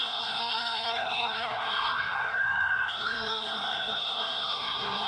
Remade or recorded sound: remade